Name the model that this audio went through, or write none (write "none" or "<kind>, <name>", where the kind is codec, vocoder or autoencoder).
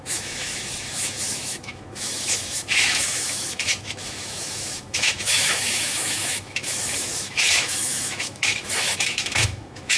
autoencoder, DAC-VAE